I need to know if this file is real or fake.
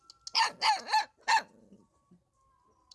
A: real